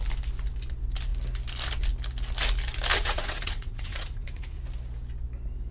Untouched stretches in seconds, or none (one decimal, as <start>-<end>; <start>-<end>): 0.0-2.9; 4.6-5.7